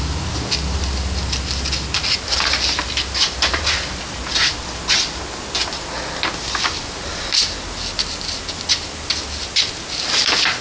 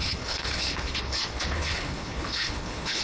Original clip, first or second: first